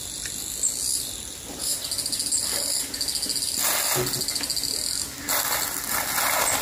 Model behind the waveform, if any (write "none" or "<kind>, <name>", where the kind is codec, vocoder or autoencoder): none